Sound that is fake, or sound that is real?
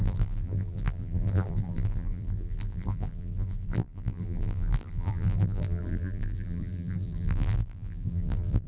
fake